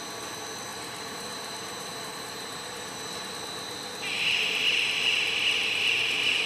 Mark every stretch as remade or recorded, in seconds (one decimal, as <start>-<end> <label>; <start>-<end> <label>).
0.0-0.7 recorded; 0.7-3.3 remade; 3.3-6.5 recorded